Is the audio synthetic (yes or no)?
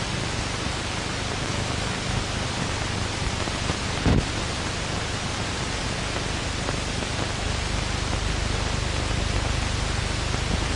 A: no